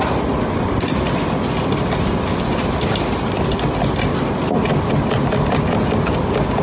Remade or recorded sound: recorded